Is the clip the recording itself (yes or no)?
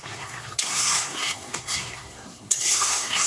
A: no